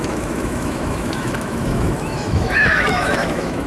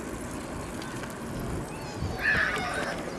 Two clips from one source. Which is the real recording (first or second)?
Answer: second